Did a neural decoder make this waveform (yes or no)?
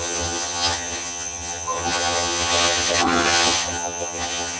yes